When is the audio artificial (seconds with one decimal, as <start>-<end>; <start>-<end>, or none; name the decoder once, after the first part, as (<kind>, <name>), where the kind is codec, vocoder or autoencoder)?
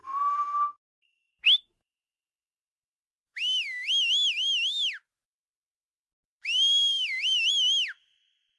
0.0-1.3 (codec, SNAC)